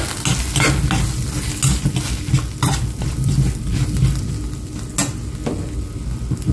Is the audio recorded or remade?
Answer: recorded